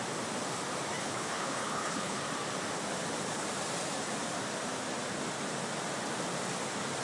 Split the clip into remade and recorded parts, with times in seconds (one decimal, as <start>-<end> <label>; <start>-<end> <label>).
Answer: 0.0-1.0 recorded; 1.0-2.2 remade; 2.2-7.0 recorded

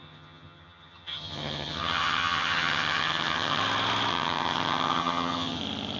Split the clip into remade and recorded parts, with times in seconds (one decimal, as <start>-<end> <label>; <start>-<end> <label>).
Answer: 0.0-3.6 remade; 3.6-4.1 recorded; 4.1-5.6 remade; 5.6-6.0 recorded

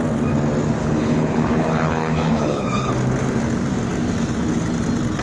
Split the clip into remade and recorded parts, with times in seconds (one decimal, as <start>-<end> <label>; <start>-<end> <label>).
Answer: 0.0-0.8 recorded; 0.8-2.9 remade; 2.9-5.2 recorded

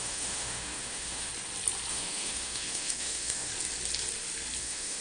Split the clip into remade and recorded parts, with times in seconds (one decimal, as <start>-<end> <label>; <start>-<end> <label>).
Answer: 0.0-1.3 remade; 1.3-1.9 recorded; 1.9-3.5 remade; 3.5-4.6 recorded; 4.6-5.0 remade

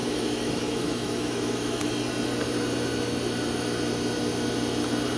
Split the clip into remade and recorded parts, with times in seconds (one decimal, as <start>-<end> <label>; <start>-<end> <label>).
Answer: 0.0-1.9 remade; 1.9-5.2 recorded

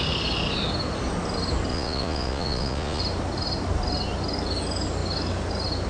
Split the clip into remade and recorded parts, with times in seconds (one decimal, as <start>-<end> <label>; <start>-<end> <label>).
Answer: 0.0-1.7 recorded; 1.7-3.0 remade; 3.0-5.9 recorded